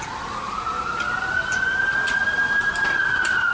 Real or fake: real